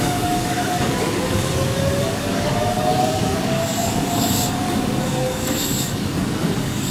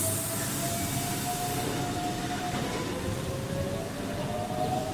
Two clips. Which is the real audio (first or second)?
second